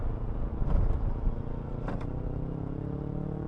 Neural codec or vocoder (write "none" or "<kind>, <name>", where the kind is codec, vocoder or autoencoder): none